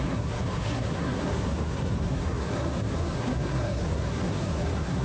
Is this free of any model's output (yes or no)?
no